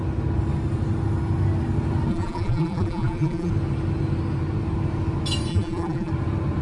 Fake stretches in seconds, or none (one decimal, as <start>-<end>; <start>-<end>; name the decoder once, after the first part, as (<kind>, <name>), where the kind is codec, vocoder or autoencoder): 2.1-3.5 (vocoder, BigVGAN v2); 5.5-6.1